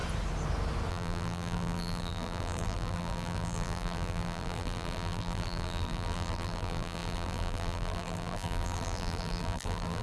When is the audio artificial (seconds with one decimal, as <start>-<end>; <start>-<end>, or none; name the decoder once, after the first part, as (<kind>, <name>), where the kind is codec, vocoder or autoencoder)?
0.9-10.0 (vocoder, BigVGAN v2)

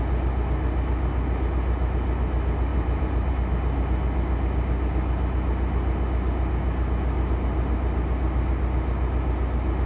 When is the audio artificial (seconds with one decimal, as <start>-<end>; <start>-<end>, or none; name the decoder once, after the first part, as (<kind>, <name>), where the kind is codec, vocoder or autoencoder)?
2.7-3.3 (vocoder, BigVGAN v2)

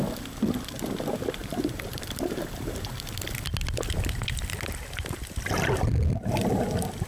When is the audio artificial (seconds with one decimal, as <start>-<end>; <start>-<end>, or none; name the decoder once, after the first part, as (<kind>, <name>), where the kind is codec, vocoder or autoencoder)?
1.4-2.9 (vocoder, BigVGAN v2)

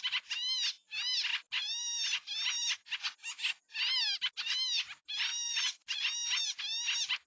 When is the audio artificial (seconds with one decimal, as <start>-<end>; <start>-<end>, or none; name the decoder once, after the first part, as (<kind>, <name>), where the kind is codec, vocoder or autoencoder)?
5.3-6.6 (vocoder, BigVGAN v2)

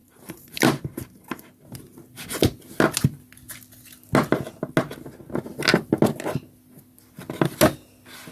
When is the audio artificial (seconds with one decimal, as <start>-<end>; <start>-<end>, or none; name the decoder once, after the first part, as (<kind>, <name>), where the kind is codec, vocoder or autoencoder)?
0.0-1.4 (vocoder, BigVGAN v2)